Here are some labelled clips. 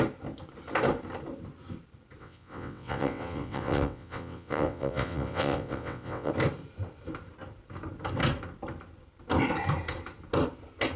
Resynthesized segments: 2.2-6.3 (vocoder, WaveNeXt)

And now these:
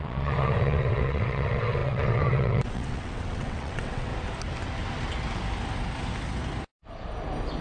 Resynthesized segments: 0.0-4.1 (vocoder, WaveNeXt)

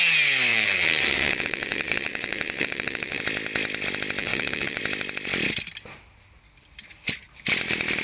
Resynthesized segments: 0.5-3.2 (vocoder, WaveNeXt); 4.2-4.8